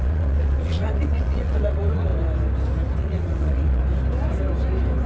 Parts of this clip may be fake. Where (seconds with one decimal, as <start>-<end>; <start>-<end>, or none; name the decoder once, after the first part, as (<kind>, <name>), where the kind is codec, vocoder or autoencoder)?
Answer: 0.0-2.1 (vocoder, Vocos); 3.0-3.8